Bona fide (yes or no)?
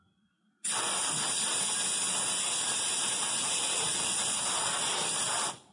yes